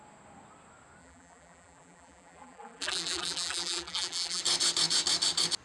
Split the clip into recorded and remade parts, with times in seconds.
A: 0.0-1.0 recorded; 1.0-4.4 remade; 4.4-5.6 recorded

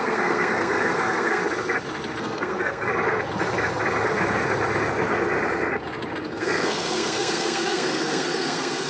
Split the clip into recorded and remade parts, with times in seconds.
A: 0.0-1.4 remade; 1.4-2.2 recorded; 2.2-2.9 remade; 2.9-6.2 recorded; 6.2-8.9 remade

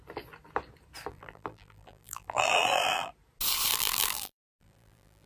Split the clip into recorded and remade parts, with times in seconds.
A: 0.0-1.1 recorded; 1.1-3.1 remade; 3.1-3.7 recorded; 3.7-5.3 remade

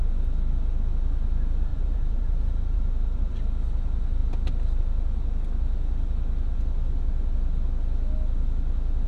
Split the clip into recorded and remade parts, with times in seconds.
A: 0.0-1.7 recorded; 1.7-3.3 remade; 3.3-9.1 recorded

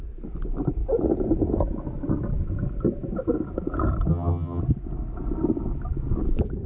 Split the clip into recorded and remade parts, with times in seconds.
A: 0.0-4.1 recorded; 4.1-4.6 remade; 4.6-6.7 recorded

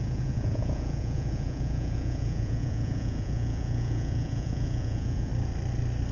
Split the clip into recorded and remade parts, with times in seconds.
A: 0.0-5.3 remade; 5.3-6.1 recorded

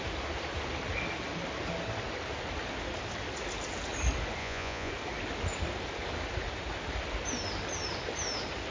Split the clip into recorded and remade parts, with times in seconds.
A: 0.0-4.4 recorded; 4.4-4.9 remade; 4.9-8.7 recorded